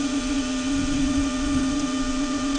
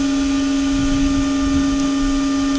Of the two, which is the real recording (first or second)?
second